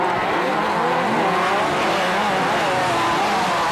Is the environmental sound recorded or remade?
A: recorded